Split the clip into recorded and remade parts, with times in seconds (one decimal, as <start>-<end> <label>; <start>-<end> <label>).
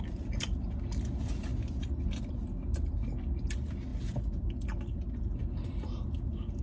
0.0-6.6 recorded